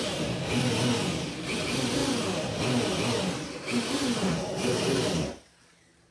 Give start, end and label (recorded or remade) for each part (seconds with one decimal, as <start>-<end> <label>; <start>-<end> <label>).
0.0-6.1 recorded

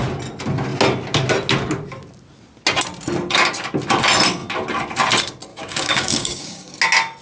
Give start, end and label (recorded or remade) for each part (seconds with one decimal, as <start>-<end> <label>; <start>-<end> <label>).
0.0-5.5 recorded; 5.5-6.8 remade; 6.8-7.2 recorded

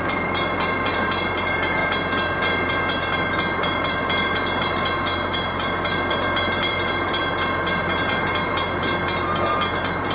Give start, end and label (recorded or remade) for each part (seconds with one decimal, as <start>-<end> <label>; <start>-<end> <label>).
0.0-1.8 remade; 1.8-3.8 recorded; 3.8-7.2 remade; 7.2-9.6 recorded; 9.6-10.1 remade

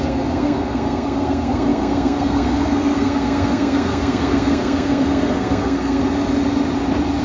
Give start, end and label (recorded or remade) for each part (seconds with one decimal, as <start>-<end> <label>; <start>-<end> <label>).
0.0-6.0 remade; 6.0-7.2 recorded

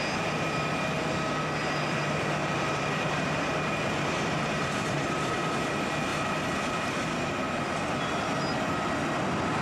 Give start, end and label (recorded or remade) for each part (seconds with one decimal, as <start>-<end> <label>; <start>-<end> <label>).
0.0-2.4 recorded; 2.4-5.3 remade; 5.3-9.6 recorded

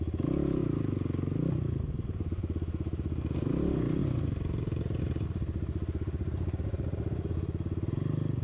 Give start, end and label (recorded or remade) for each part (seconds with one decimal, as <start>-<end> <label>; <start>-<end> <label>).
0.0-8.4 recorded

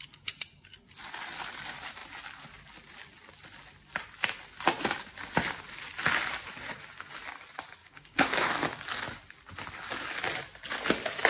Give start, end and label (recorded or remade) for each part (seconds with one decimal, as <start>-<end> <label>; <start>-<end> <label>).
0.0-7.8 recorded; 7.8-8.5 remade; 8.5-11.3 recorded

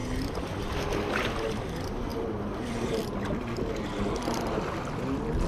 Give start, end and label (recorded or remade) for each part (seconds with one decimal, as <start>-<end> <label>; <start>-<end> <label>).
0.0-5.5 recorded